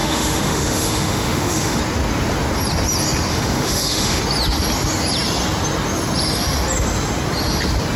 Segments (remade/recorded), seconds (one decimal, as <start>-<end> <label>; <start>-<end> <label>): 0.0-1.8 remade; 1.8-3.3 recorded; 3.3-4.2 remade; 4.2-8.0 recorded